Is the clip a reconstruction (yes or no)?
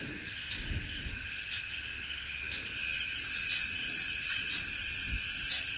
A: no